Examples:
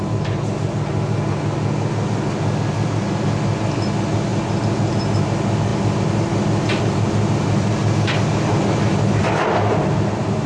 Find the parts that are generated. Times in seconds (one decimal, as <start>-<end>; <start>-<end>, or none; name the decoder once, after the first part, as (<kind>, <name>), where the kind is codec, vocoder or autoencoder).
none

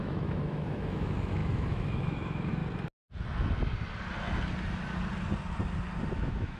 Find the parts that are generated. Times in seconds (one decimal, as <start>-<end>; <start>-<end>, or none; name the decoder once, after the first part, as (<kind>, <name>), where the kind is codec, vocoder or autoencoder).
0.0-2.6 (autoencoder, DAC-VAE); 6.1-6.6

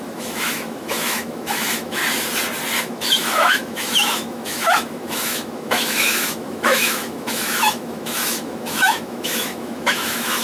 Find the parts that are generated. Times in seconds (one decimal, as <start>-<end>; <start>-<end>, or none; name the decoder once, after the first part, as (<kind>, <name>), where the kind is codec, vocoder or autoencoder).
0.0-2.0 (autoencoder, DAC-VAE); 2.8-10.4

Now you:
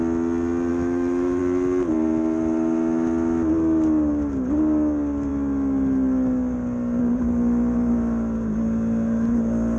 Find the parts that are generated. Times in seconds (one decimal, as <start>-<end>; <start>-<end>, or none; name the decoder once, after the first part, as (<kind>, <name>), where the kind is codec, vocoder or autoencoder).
0.7-1.4 (autoencoder, DAC-VAE)

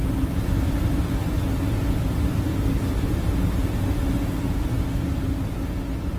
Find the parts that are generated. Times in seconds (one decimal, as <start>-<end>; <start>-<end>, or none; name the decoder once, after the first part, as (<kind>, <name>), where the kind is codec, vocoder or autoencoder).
none

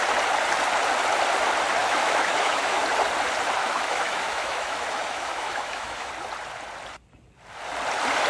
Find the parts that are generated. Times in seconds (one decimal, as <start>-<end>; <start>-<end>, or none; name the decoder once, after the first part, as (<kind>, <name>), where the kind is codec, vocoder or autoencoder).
1.8-2.8 (autoencoder, DAC-VAE); 3.6-6.1

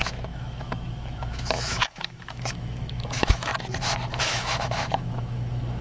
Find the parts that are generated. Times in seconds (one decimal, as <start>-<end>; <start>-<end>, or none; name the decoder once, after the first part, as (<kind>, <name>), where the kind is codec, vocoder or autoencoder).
0.0-3.5 (autoencoder, DAC-VAE); 4.2-5.8

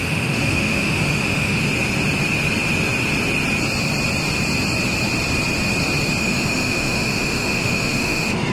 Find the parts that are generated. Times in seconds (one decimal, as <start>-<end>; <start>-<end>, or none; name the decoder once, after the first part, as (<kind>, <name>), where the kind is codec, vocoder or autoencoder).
0.0-1.6 (autoencoder, DAC-VAE); 6.2-8.5